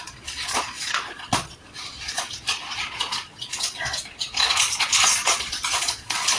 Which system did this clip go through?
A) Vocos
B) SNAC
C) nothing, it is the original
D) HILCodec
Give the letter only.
A